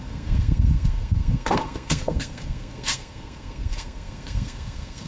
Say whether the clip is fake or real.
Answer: fake